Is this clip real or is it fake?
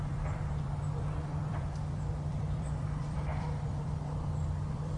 fake